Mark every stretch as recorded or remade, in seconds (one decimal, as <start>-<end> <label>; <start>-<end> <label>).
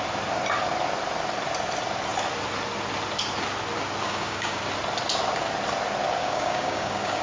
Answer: 0.0-4.0 recorded; 4.0-4.6 remade; 4.6-6.2 recorded; 6.2-7.2 remade